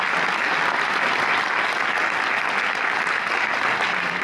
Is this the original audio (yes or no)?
yes